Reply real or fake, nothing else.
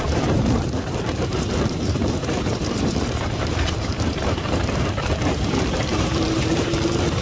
fake